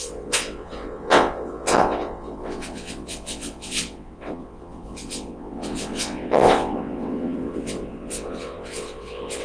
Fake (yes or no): yes